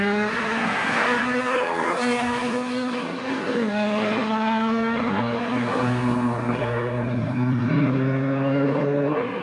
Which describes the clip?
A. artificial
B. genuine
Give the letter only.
A